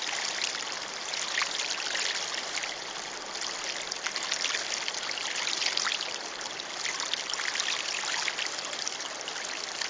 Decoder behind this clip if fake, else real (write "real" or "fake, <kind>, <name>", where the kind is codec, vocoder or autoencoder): real